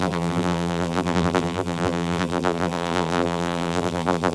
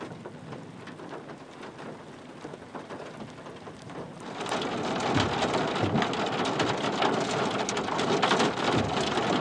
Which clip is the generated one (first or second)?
first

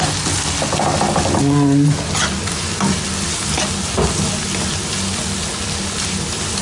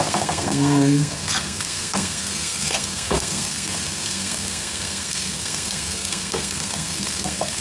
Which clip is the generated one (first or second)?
second